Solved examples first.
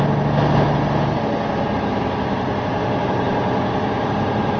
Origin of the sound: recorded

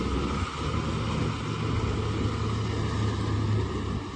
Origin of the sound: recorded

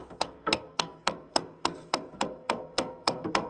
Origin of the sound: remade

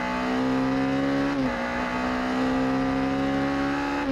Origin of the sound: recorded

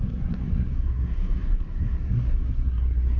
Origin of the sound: remade